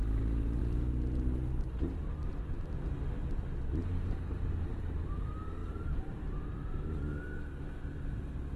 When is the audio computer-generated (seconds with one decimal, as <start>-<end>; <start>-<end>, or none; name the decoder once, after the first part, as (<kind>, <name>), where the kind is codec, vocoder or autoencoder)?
none